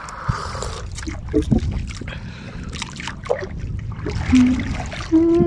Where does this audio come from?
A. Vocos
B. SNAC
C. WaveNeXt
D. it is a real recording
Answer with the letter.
D